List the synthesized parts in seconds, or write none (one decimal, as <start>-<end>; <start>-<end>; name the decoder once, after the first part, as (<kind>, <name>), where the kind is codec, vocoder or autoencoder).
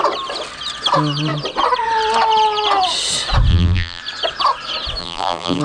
3.5-4.0 (vocoder, BigVGAN v2); 5.0-5.6